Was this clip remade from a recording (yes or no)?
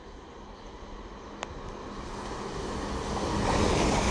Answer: no